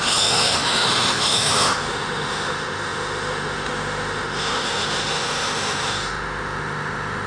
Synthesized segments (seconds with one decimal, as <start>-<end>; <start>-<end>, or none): 0.0-7.3